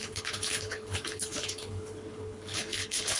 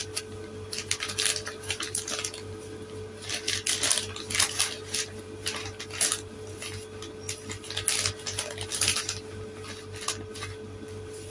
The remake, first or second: first